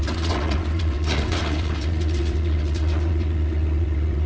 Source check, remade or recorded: remade